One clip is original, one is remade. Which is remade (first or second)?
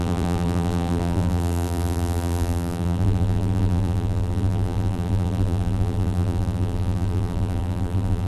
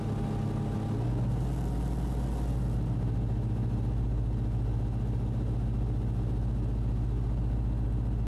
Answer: first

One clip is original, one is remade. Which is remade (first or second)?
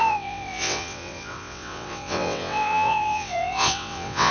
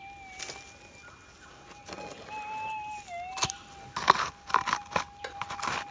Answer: first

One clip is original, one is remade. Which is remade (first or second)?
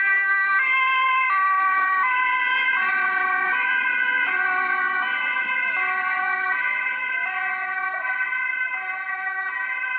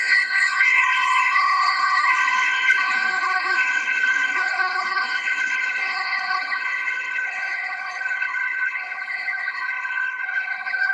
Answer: second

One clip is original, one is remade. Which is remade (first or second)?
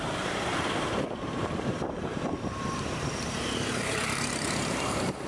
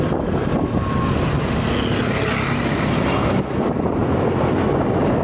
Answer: first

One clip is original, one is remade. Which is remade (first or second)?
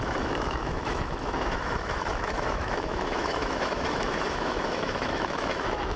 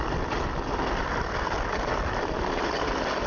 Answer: first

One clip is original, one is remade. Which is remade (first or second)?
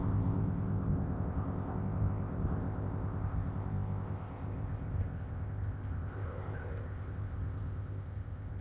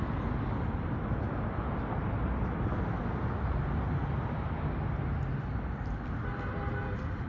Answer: first